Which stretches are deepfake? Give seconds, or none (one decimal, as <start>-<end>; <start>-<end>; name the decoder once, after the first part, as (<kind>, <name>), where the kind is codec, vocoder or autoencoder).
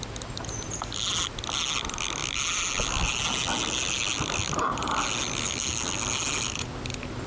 none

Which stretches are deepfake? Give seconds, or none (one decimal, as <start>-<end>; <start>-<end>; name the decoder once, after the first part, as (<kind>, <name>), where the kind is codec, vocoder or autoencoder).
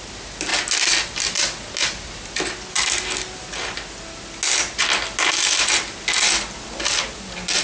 none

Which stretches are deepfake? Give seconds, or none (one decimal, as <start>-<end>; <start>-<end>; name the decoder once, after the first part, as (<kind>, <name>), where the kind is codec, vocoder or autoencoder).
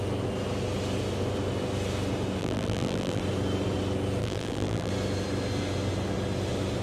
2.4-3.2 (vocoder, BigVGAN v2); 4.2-4.9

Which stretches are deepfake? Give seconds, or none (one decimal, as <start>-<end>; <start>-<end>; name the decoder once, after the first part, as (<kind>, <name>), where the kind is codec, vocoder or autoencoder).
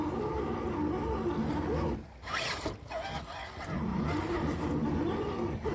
3.9-5.7 (vocoder, BigVGAN v2)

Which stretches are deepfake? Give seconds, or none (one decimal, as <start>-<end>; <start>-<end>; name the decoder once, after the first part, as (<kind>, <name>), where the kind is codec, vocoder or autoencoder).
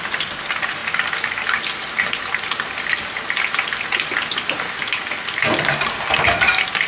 none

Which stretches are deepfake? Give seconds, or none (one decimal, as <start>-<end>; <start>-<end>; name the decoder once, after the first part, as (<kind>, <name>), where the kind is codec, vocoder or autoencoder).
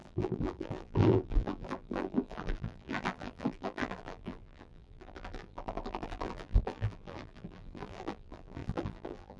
0.0-9.4 (vocoder, BigVGAN v2)